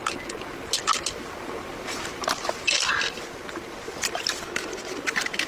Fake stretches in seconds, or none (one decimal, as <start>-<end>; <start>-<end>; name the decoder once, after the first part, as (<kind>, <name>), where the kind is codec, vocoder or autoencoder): none